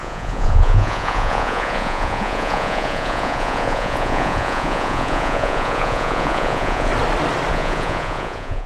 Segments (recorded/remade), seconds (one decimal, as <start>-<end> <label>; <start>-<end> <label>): 0.0-6.9 remade; 6.9-7.5 recorded; 7.5-8.7 remade